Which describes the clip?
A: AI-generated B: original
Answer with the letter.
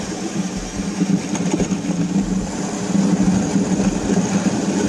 B